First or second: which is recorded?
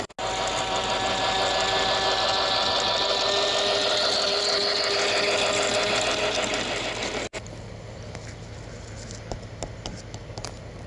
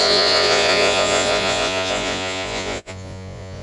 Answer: first